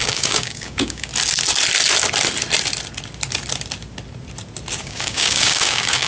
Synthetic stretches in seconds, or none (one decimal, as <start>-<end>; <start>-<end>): 0.0-1.1; 4.8-6.1